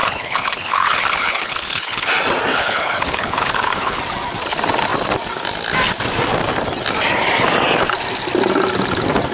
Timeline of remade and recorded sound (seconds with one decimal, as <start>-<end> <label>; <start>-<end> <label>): 0.0-2.1 remade; 2.1-2.5 recorded; 2.5-4.0 remade; 4.0-9.3 recorded